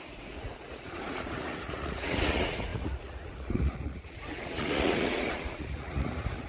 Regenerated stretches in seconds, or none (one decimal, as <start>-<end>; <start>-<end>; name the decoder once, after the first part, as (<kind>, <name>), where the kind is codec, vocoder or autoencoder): 0.0-6.5 (vocoder, Vocos)